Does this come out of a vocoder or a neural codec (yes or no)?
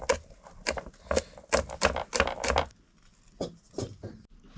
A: no